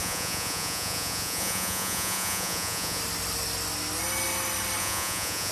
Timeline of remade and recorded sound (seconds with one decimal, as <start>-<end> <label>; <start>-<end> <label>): 0.0-3.0 remade; 3.0-4.8 recorded; 4.8-5.5 remade